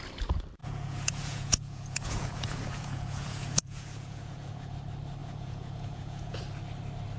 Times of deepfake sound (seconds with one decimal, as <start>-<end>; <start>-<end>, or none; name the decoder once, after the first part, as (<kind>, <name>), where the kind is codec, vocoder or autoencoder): 0.6-4.7 (vocoder, Vocos); 5.2-6.4